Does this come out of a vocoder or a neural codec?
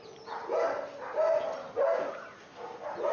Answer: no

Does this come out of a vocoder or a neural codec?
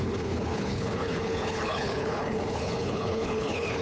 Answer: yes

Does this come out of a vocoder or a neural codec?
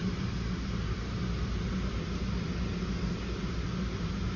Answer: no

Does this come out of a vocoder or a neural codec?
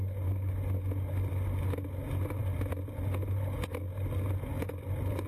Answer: no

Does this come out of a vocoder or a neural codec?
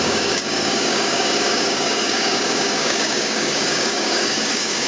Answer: yes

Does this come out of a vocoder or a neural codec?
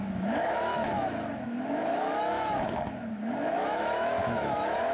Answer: yes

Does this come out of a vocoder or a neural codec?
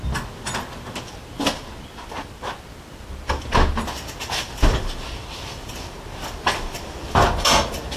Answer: no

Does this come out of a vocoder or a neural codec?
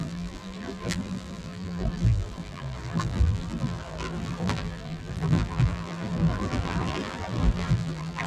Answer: yes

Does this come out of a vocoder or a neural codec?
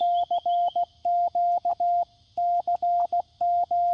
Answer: no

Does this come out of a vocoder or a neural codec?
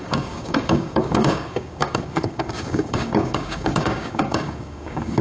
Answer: yes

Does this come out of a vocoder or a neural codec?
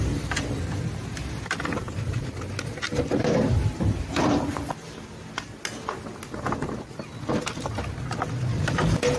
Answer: no